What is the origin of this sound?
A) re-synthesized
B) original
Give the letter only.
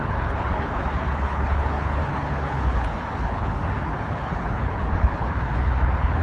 A